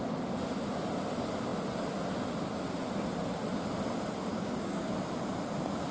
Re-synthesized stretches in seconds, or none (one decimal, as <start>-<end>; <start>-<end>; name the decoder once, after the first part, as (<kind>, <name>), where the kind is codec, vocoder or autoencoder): 4.3-4.9 (codec, DAC)